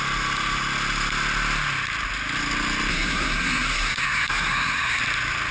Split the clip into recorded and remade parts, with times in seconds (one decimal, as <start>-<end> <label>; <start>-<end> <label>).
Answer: 0.0-2.9 recorded; 2.9-5.0 remade; 5.0-5.5 recorded